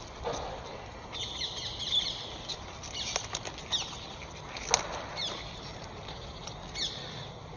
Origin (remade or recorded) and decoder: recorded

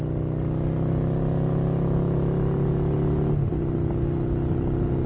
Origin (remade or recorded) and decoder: recorded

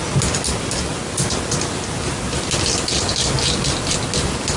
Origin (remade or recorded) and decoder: recorded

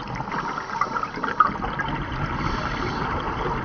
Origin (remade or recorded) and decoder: recorded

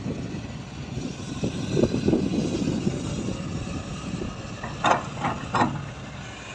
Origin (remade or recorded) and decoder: recorded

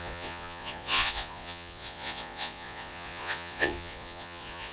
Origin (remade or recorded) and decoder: remade, vocoder, Vocos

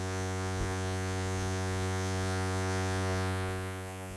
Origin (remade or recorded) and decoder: remade, vocoder, Vocos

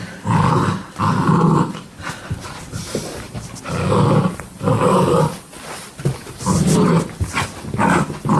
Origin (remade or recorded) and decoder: recorded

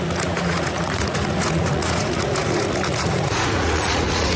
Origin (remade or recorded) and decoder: remade, vocoder, Vocos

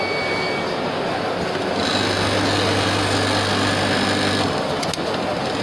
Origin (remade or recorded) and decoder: recorded